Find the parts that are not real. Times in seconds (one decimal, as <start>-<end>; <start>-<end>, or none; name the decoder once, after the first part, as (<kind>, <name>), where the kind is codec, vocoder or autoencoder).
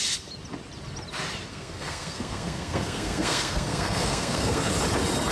1.5-4.7 (codec, SNAC)